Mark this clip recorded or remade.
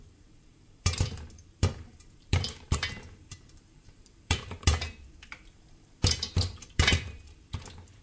remade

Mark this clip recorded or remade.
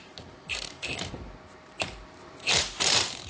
remade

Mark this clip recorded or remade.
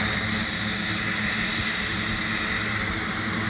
recorded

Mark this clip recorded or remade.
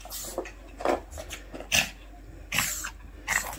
recorded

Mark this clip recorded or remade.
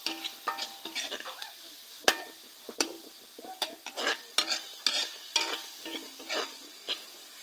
recorded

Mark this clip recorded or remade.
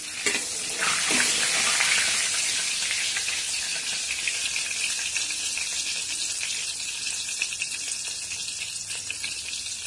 recorded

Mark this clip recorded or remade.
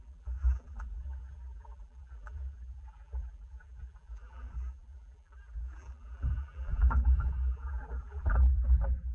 remade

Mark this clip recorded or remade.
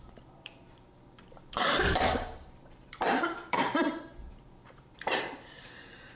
remade